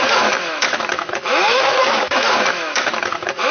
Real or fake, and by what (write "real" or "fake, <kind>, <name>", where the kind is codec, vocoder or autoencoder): fake, autoencoder, DAC-VAE